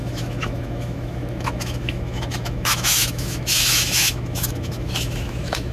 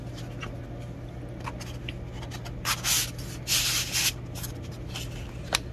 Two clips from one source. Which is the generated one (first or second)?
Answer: first